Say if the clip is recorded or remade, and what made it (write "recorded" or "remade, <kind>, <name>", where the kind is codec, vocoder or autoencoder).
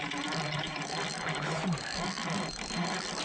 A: recorded